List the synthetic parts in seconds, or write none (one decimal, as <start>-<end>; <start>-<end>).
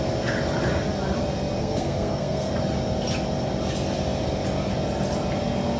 1.6-2.5